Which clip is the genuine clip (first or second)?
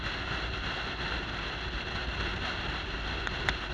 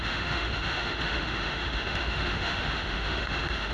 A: first